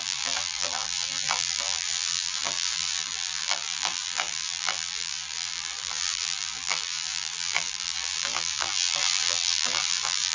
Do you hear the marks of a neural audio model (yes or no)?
yes